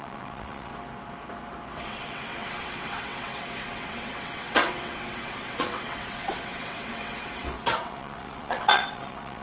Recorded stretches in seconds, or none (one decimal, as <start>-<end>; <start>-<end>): 0.7-1.8